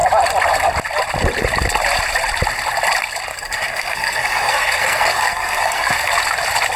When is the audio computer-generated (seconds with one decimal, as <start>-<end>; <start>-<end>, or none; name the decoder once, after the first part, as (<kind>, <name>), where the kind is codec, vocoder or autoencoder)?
3.3-6.1 (codec, SNAC)